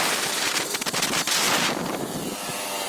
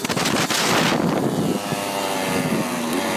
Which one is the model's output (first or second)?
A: first